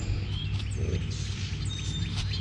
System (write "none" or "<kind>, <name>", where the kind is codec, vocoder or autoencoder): none